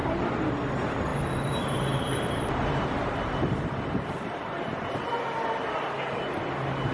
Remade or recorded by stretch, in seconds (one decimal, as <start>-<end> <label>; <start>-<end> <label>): 0.0-1.1 recorded; 1.1-5.2 remade; 5.2-6.9 recorded